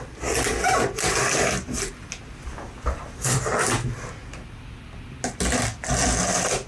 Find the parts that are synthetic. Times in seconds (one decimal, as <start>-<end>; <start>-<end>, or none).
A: none

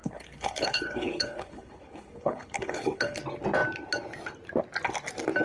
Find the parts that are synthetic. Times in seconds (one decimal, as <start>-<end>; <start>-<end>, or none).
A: 0.0-3.2

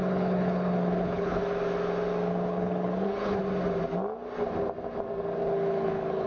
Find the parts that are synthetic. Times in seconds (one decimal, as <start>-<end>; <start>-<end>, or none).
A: 0.0-1.4; 2.3-3.4; 5.4-6.3

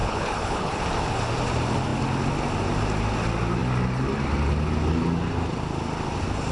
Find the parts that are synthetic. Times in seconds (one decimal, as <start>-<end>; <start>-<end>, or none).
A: 0.0-0.8

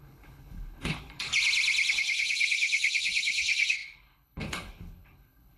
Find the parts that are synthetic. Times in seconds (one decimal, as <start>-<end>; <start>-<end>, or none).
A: 0.0-1.3; 1.9-5.6

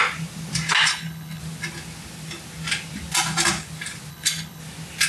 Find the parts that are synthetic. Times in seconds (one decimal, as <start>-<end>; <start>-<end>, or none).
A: 0.9-1.4; 4.1-4.6